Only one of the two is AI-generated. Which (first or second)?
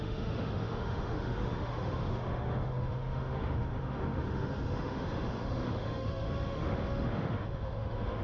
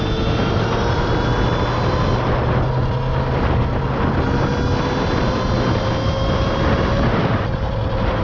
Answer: first